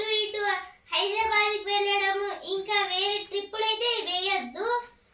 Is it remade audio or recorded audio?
recorded